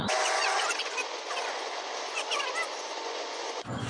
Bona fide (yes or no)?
no